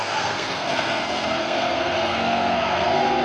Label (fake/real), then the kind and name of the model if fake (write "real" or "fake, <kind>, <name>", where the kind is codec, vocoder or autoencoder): fake, codec, SNAC